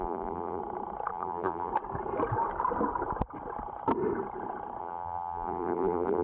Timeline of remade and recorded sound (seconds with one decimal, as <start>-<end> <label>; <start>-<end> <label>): 0.0-0.6 remade; 0.6-1.1 recorded; 1.1-1.7 remade; 1.7-4.8 recorded; 4.8-6.2 remade